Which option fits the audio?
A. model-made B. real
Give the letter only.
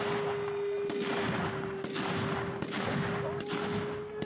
B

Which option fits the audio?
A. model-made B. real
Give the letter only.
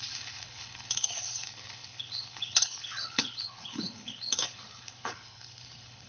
A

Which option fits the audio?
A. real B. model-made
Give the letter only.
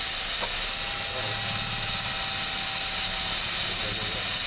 A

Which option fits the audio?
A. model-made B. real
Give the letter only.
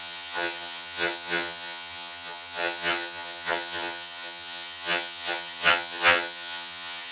A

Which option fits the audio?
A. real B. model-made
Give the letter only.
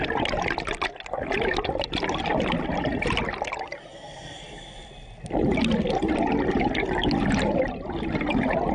A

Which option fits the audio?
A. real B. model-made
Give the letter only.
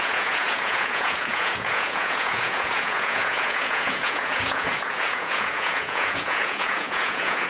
B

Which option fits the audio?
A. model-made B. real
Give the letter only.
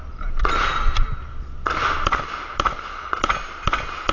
B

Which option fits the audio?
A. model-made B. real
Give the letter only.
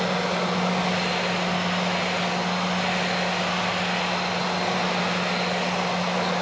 B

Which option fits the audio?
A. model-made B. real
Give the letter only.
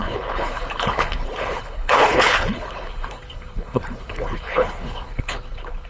A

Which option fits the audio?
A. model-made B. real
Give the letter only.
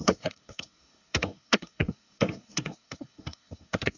A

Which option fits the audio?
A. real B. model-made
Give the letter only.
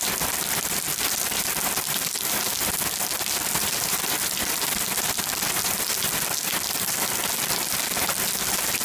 A